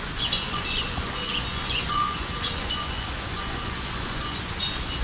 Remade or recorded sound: remade